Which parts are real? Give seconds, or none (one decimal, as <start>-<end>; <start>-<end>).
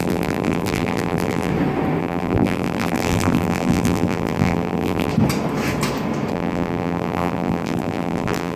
1.5-2.0; 5.1-6.3